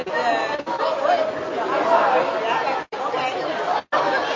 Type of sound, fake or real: real